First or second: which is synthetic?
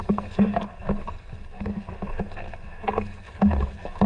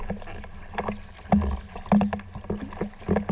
first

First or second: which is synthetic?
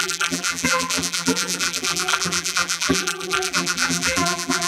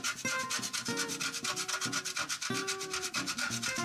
first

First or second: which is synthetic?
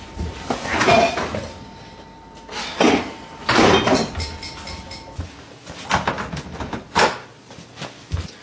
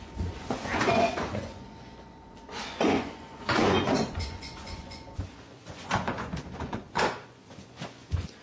second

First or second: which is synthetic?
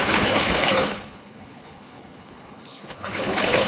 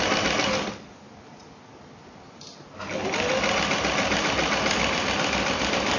first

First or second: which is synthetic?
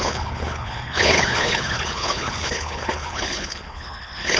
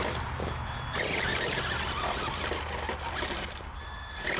first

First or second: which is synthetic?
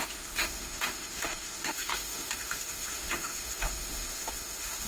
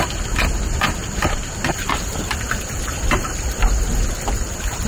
first